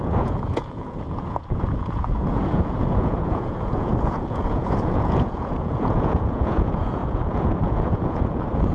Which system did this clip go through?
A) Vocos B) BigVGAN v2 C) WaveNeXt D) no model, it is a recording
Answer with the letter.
A